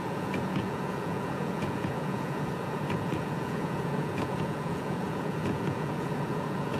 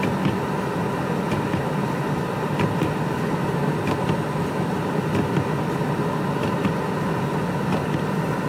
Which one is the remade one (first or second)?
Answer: first